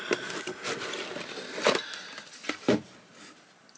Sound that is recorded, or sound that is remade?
recorded